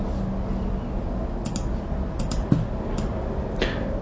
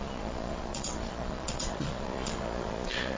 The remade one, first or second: second